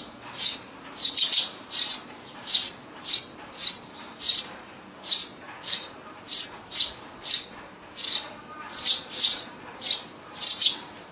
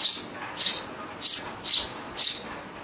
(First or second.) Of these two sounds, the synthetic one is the first